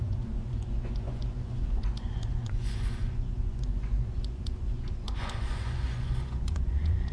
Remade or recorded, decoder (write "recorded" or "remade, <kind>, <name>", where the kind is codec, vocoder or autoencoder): remade, vocoder, Vocos